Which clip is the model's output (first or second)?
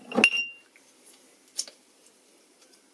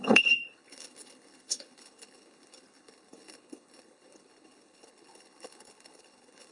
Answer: second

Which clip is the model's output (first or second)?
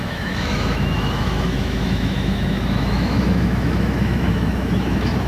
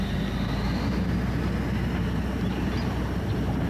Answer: first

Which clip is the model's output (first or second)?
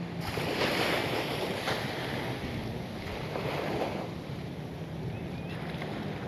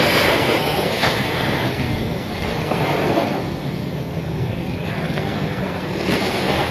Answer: second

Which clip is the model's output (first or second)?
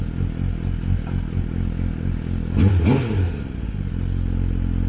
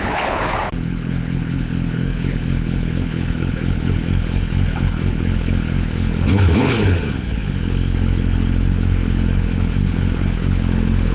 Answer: second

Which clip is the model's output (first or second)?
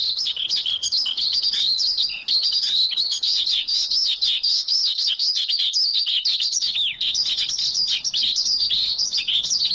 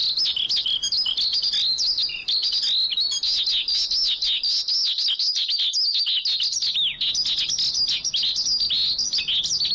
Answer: first